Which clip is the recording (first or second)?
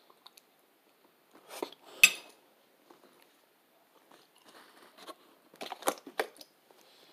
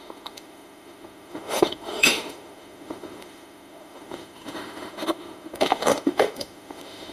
first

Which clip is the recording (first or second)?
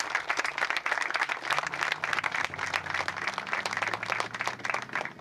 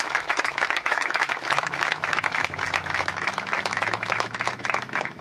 first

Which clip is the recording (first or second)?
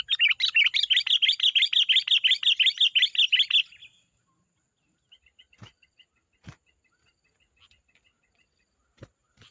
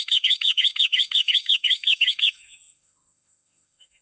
first